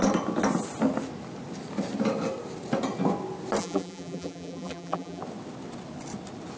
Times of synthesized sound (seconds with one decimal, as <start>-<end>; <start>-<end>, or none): 3.6-5.2